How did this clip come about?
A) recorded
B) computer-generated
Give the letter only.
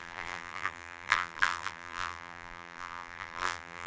B